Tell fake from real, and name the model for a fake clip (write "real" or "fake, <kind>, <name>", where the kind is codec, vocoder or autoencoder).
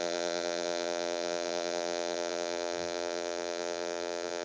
fake, vocoder, BigVGAN v2